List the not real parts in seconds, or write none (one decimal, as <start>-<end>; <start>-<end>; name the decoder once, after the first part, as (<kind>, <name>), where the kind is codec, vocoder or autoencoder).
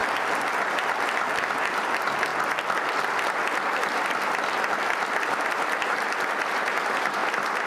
1.6-2.3 (vocoder, BigVGAN v2); 6.5-7.2